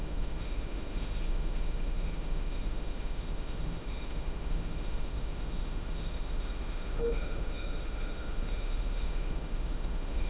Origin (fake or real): fake